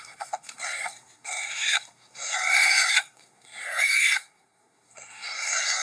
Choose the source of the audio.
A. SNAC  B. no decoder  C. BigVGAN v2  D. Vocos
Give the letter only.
A